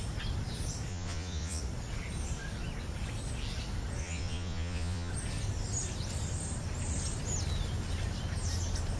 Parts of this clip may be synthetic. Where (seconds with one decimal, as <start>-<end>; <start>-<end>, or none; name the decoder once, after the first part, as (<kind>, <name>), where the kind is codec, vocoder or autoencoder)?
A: 0.9-1.6 (vocoder, Vocos); 4.0-5.1